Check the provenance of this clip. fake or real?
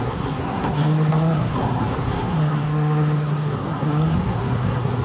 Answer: fake